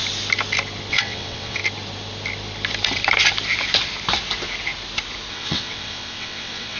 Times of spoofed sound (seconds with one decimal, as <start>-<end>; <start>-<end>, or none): 0.9-1.6; 5.3-6.8